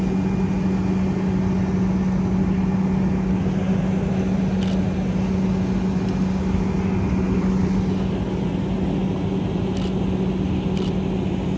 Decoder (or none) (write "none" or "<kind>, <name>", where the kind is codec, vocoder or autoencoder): none